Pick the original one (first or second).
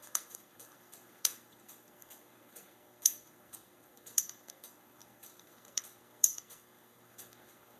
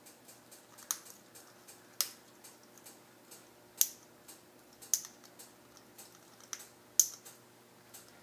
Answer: second